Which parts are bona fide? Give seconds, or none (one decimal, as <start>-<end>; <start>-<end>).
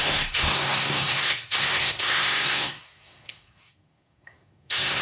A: none